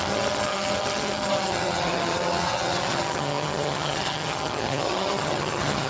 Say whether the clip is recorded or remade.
remade